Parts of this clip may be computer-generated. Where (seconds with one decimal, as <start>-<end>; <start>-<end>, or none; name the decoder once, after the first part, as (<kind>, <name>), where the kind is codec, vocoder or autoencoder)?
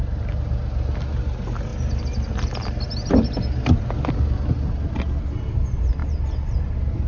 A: none